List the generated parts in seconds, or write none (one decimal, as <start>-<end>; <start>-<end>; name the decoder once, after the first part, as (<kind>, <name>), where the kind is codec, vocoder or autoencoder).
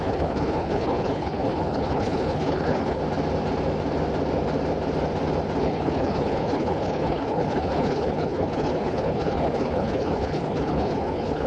0.0-3.0 (codec, HILCodec); 5.6-11.5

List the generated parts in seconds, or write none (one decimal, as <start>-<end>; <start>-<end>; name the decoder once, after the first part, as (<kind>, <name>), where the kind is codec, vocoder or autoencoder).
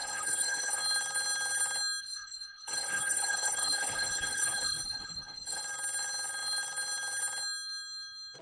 0.0-0.8 (codec, HILCodec); 2.0-5.6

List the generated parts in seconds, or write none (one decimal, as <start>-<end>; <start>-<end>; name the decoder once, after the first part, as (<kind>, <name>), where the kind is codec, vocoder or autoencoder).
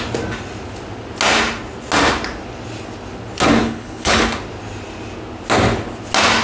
3.6-4.2 (codec, HILCodec)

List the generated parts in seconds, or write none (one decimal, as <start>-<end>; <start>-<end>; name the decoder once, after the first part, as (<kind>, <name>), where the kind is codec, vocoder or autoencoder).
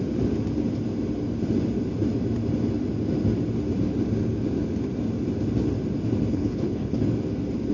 6.3-7.0 (codec, HILCodec)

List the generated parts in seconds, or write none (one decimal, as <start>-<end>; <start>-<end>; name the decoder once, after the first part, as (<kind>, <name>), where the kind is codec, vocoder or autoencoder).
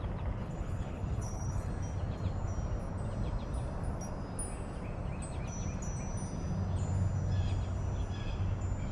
0.4-1.7 (codec, HILCodec)